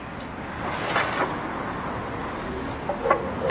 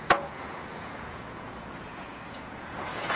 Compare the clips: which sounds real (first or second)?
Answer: first